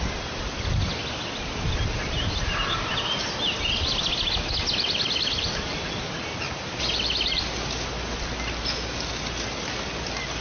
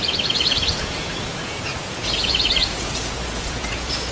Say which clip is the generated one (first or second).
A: second